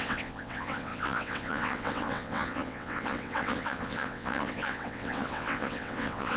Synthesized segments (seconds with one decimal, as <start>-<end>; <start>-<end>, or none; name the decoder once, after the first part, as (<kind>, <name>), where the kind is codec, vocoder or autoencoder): 0.0-6.4 (vocoder, WaveNeXt)